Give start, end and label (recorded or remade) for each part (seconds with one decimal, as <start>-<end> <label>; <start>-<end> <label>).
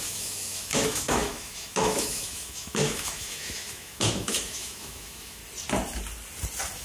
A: 0.0-5.4 remade; 5.4-6.8 recorded